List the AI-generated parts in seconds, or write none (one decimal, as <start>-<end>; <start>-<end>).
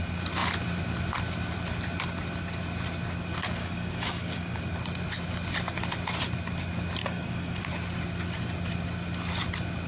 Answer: 3.6-4.6; 7.0-7.6